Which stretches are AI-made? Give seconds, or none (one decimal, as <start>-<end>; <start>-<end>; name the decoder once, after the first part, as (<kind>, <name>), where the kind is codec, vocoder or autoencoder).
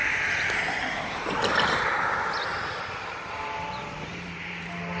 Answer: none